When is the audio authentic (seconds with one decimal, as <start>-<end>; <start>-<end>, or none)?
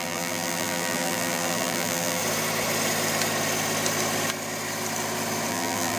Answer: 2.2-5.5